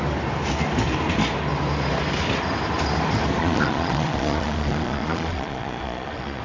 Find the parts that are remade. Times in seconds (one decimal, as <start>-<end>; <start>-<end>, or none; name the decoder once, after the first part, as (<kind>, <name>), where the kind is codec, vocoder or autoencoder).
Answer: 3.4-6.4 (vocoder, Vocos)